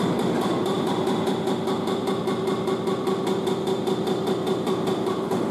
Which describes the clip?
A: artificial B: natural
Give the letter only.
B